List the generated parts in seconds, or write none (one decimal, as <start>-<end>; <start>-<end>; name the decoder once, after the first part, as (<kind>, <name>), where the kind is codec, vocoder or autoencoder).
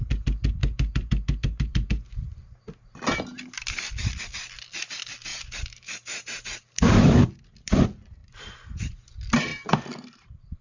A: 0.6-2.9 (vocoder, BigVGAN v2); 5.3-6.6; 8.2-8.9; 9.5-10.6